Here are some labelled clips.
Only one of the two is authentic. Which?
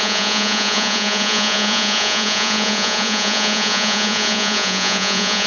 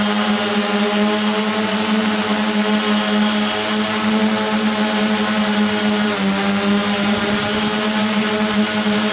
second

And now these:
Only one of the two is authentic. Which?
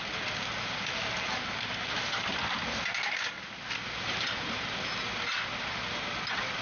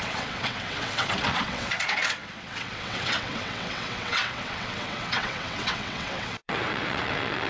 first